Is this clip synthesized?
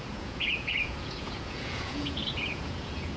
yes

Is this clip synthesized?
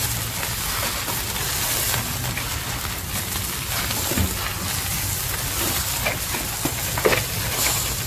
no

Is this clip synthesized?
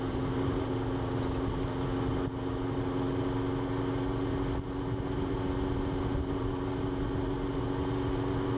no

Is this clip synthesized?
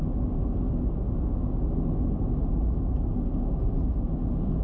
no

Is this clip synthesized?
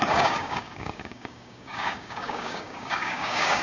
yes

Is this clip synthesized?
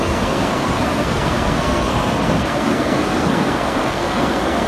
yes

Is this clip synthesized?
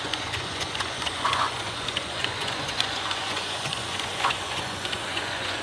yes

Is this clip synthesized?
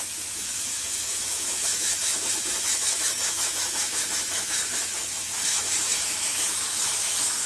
yes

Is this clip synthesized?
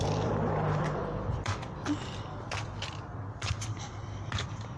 yes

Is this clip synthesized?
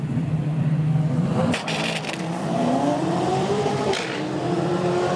yes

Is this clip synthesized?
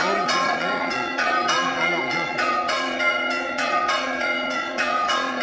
yes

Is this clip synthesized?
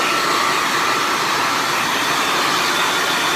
no